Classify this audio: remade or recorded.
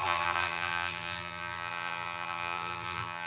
remade